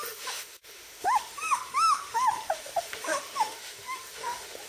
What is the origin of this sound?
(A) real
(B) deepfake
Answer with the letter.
B